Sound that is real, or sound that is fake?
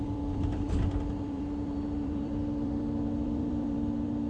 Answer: fake